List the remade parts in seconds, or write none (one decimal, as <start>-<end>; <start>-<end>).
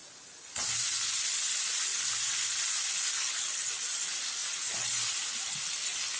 none